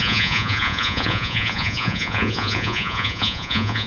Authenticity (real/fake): fake